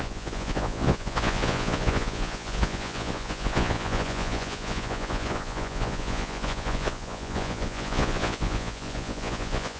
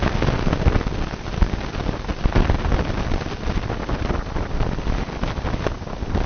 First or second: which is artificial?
first